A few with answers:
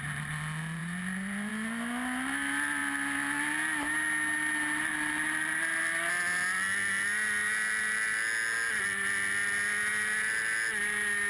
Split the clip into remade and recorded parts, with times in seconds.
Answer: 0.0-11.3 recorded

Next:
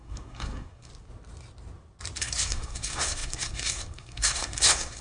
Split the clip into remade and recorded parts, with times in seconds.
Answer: 0.0-0.9 remade; 0.9-2.2 recorded; 2.2-5.0 remade

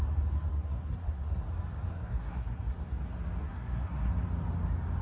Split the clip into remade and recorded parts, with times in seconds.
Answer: 0.0-0.5 recorded; 0.5-1.4 remade; 1.4-1.9 recorded; 1.9-2.8 remade; 2.8-3.4 recorded; 3.4-4.1 remade; 4.1-5.0 recorded